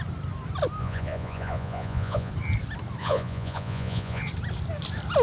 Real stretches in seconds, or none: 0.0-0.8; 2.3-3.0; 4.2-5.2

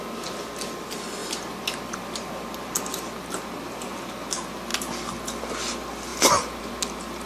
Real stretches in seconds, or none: 0.0-7.3

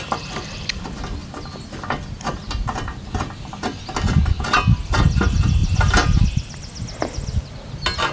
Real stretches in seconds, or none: 0.0-8.1